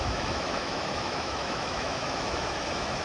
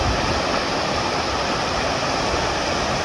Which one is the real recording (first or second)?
second